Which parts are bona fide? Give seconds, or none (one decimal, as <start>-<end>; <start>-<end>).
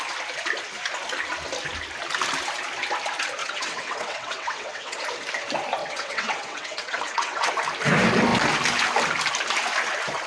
0.0-3.4; 5.0-5.8; 7.5-10.3